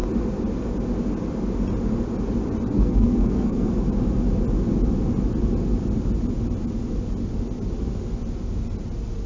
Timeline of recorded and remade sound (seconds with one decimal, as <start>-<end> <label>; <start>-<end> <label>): 0.0-2.7 recorded; 2.7-3.7 remade; 3.7-9.3 recorded